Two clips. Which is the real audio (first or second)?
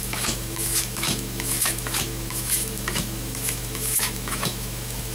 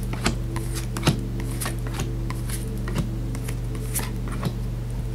second